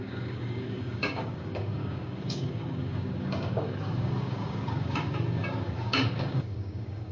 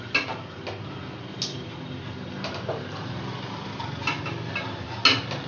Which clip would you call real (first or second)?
second